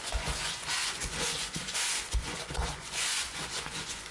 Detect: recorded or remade remade